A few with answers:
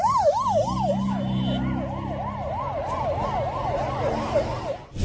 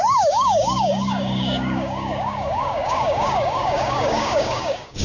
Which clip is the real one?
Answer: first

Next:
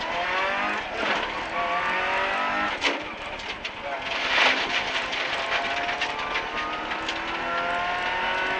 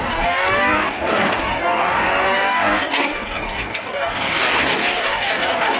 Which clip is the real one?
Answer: first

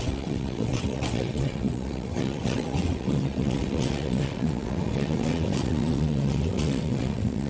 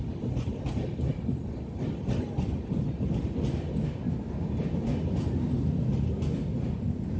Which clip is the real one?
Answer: second